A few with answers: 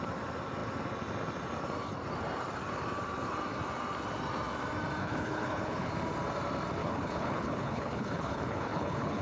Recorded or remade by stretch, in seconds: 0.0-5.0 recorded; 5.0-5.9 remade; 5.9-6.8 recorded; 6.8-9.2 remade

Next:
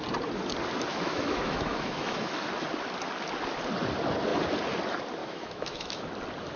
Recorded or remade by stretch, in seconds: 0.0-0.9 recorded; 0.9-2.5 remade; 2.5-5.2 recorded; 5.2-6.1 remade; 6.1-6.6 recorded

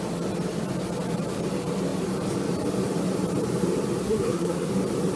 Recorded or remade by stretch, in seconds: 0.0-4.0 recorded; 4.0-4.7 remade; 4.7-5.2 recorded